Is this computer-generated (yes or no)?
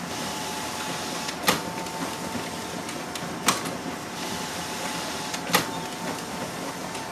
no